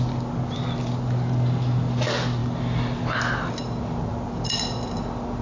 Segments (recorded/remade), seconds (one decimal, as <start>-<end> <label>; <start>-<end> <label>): 0.0-5.4 recorded